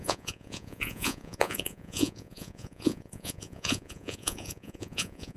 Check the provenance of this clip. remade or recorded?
remade